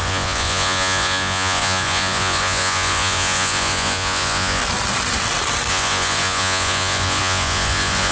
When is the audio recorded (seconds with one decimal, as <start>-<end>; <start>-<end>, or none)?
4.6-5.7